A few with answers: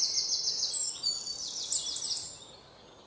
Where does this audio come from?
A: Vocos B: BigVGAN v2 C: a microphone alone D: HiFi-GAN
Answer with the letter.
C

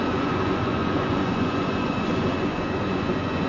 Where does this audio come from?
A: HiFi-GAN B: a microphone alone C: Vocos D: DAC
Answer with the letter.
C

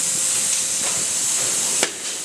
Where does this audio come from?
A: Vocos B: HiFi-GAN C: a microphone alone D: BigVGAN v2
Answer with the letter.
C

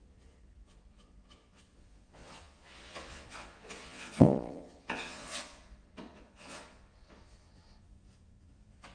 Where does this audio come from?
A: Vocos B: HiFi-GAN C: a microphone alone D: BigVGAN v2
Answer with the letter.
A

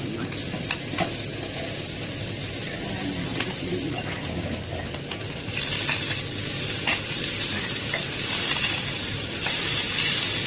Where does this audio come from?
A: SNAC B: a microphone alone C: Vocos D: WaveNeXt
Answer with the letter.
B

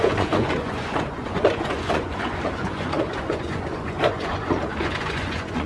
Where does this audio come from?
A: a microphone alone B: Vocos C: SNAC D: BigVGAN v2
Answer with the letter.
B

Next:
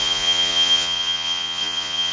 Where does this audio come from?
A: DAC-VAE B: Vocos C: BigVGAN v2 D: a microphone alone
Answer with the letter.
B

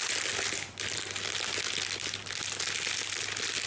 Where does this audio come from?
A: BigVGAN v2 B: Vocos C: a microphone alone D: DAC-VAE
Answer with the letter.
C